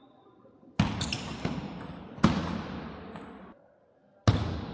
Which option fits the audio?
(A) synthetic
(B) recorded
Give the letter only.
B